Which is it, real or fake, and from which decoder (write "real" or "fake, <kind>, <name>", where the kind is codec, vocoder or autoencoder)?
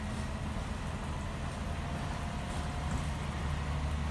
real